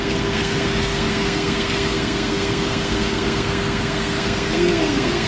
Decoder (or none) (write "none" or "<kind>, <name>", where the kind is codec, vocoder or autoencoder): codec, SNAC